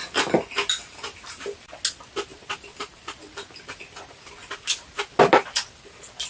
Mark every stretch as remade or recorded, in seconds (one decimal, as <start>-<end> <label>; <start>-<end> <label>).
0.0-6.3 recorded